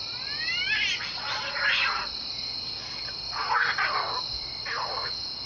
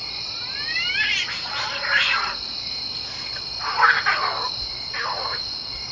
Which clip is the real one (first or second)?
first